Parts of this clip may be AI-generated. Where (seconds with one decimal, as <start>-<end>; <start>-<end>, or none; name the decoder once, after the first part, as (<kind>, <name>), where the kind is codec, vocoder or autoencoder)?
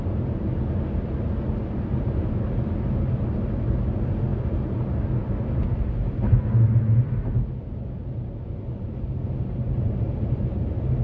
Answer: none